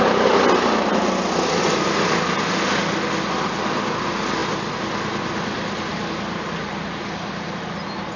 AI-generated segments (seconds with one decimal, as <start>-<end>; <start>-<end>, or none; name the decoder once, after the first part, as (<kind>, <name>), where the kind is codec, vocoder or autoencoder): none